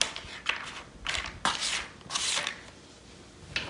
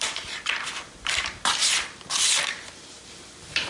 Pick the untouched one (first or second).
first